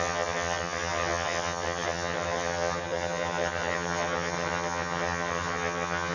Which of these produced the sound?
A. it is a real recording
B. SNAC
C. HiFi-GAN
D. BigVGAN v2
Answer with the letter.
C